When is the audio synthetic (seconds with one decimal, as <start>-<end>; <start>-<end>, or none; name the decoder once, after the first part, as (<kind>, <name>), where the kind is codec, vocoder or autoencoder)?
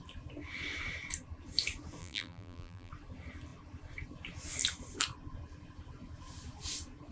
2.0-2.9 (vocoder, BigVGAN v2)